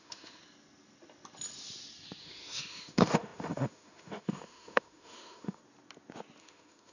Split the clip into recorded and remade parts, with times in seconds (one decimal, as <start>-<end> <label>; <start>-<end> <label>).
0.0-0.4 remade; 0.4-2.2 recorded; 2.2-5.6 remade; 5.6-6.4 recorded; 6.4-6.9 remade